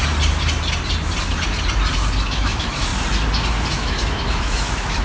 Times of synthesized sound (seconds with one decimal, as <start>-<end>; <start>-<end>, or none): 2.3-2.9; 3.7-5.0